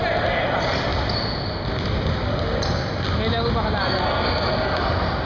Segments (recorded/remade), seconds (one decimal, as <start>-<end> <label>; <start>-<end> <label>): 0.0-5.3 recorded